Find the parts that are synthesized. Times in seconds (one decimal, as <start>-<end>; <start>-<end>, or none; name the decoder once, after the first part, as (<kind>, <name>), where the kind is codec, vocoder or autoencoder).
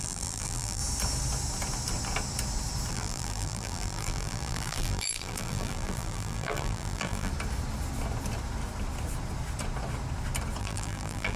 0.0-0.8 (vocoder, BigVGAN v2); 2.9-7.3; 10.6-11.4